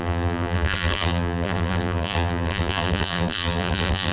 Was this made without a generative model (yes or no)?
no